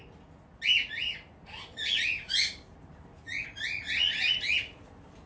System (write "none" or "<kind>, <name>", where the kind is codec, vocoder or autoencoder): none